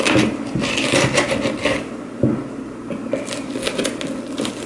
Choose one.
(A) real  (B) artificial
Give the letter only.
A